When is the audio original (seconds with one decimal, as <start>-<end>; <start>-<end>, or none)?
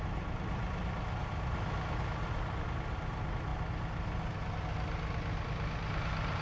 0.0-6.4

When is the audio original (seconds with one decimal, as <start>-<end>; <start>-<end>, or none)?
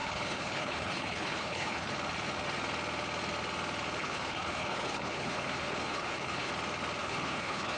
1.9-4.0; 6.5-7.0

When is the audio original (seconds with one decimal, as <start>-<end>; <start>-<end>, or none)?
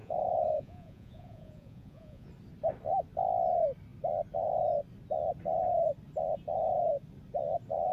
2.3-7.9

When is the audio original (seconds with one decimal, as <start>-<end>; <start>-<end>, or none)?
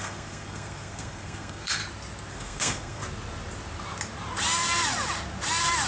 1.8-2.3; 3.0-5.9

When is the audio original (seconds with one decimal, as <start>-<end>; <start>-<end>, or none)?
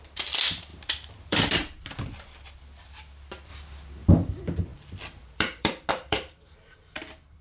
3.5-4.1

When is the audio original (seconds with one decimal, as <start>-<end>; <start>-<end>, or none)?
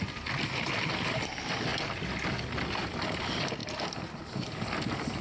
0.0-5.2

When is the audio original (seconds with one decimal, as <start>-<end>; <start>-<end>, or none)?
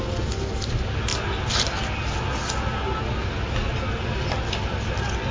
0.0-5.3